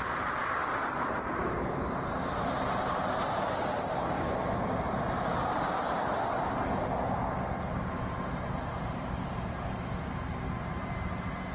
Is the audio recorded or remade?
recorded